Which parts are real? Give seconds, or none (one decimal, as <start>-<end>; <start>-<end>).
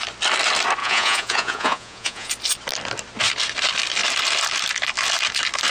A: 0.0-0.8; 2.3-5.7